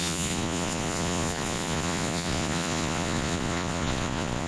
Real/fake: fake